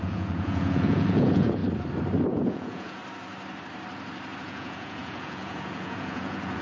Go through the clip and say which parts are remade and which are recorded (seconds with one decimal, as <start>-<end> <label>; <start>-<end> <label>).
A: 0.0-1.6 remade; 1.6-2.3 recorded; 2.3-3.0 remade; 3.0-4.4 recorded; 4.4-6.6 remade